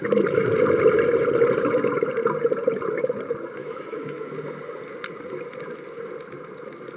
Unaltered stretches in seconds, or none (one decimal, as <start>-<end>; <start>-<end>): 0.0-3.6; 4.3-7.0